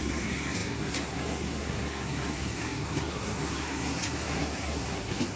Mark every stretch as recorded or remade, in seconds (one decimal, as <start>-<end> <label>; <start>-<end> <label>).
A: 0.0-5.4 remade

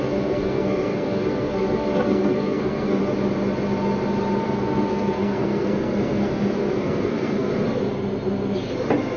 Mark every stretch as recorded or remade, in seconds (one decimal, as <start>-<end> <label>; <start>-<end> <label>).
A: 0.0-3.0 remade; 3.0-4.4 recorded; 4.4-7.5 remade; 7.5-9.2 recorded

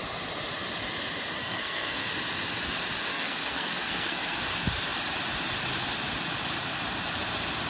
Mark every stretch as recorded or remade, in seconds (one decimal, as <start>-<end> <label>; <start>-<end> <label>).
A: 0.0-1.4 recorded; 1.4-2.1 remade; 2.1-3.1 recorded; 3.1-4.4 remade; 4.4-7.7 recorded

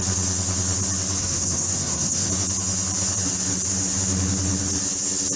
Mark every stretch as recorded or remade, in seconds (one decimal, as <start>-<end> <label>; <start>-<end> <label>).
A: 0.0-1.2 recorded; 1.2-2.3 remade; 2.3-5.4 recorded

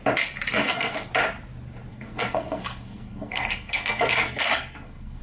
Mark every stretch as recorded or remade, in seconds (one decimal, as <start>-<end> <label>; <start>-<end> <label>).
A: 0.0-0.5 recorded; 0.5-1.1 remade; 1.1-1.9 recorded; 1.9-5.2 remade

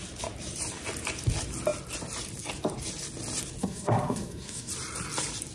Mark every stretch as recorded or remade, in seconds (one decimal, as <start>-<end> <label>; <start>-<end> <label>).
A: 0.0-3.6 recorded; 3.6-4.7 remade; 4.7-5.5 recorded